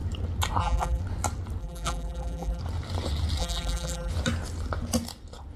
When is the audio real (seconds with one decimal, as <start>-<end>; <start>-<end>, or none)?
0.0-0.6; 1.0-1.6; 2.6-3.4; 4.1-5.6